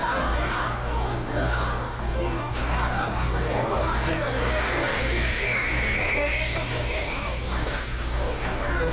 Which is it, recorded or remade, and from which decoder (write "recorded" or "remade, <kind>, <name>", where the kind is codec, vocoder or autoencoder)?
remade, codec, DAC